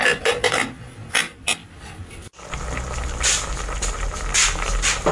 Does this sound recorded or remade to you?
recorded